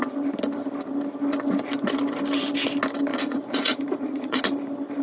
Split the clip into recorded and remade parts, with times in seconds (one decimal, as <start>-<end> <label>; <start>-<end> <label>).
0.0-3.1 recorded; 3.1-4.4 remade; 4.4-5.0 recorded